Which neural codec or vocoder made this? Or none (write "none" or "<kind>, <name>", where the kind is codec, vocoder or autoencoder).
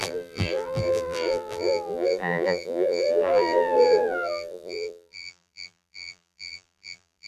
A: vocoder, BigVGAN v2